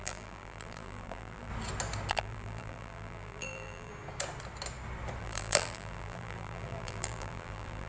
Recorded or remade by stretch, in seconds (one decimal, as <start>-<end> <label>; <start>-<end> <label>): 0.0-1.5 remade; 1.5-2.1 recorded; 2.1-3.9 remade; 3.9-5.2 recorded; 5.2-7.9 remade